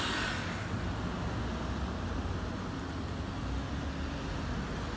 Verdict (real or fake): real